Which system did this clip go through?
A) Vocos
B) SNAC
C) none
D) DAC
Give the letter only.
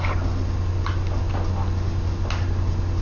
C